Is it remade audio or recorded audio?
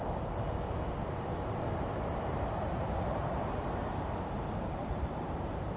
remade